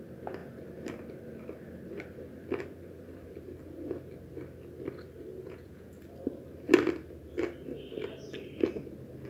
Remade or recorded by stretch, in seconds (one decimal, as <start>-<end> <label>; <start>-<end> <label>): 0.0-5.3 recorded; 5.3-5.9 remade; 5.9-9.3 recorded